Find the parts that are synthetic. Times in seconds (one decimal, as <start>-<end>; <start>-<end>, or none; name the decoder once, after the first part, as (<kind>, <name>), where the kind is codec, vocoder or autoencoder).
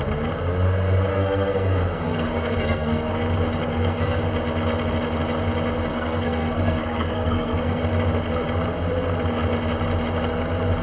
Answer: 1.1-3.1 (codec, SNAC); 3.6-4.2; 5.9-7.8